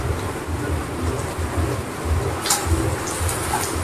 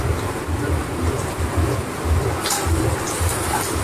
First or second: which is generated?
second